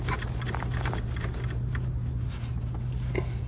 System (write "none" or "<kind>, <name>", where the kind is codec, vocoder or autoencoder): none